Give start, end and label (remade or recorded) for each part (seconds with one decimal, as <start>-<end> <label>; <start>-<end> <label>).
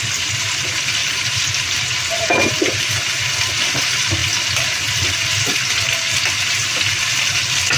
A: 0.0-1.0 recorded; 1.0-2.5 remade; 2.5-7.8 recorded